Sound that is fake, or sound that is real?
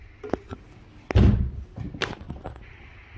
real